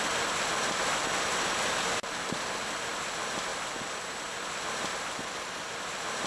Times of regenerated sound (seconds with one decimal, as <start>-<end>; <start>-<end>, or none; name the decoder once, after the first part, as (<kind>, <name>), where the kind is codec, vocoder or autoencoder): none